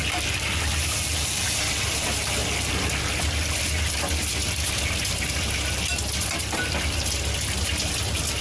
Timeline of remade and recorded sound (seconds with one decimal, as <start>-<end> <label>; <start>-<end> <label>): 0.0-8.4 recorded